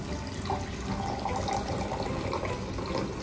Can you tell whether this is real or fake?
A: real